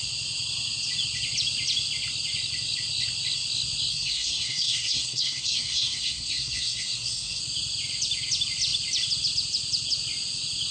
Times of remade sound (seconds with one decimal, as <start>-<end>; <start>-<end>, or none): 3.9-7.4

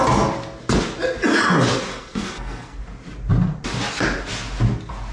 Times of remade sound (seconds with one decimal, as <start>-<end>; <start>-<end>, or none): 1.9-2.8